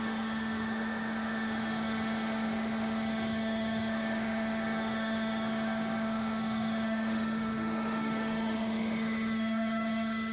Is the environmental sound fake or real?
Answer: fake